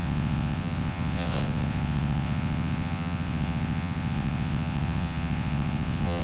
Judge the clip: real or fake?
fake